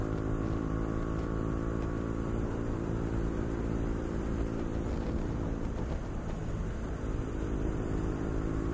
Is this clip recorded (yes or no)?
no